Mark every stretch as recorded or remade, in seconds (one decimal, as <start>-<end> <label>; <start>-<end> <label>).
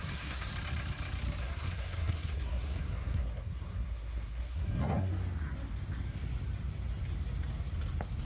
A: 0.0-0.5 remade; 0.5-1.4 recorded; 1.4-5.1 remade; 5.1-8.2 recorded